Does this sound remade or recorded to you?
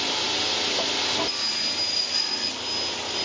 recorded